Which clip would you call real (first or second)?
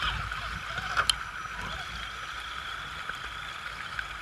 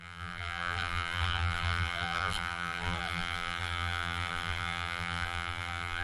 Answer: first